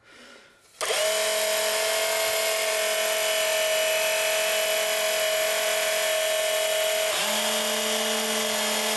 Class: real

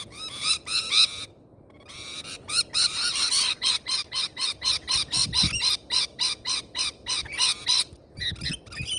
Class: real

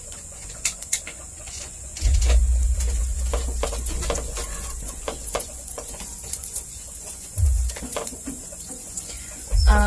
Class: fake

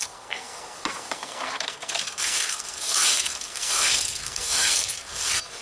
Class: fake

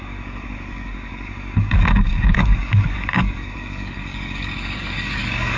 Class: fake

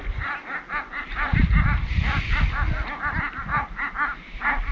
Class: real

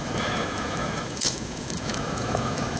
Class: fake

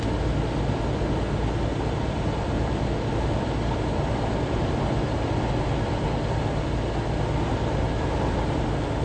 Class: real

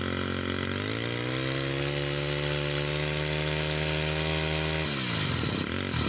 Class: real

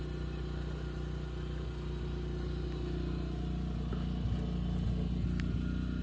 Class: real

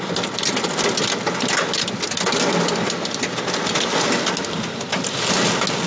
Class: real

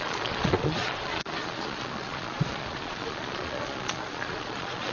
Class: fake